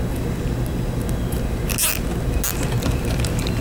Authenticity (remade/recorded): recorded